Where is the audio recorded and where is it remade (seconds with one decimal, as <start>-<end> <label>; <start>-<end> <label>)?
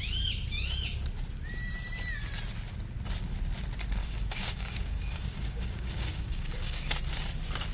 0.0-4.0 recorded; 4.0-7.0 remade; 7.0-7.7 recorded